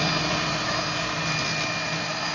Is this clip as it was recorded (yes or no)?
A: yes